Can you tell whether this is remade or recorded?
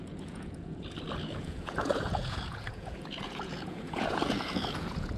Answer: remade